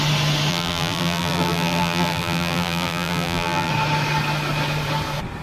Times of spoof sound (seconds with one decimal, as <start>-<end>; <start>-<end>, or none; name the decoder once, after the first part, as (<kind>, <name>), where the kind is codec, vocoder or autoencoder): 0.5-3.7 (vocoder, BigVGAN v2)